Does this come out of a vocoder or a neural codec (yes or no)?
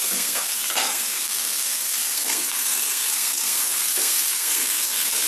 yes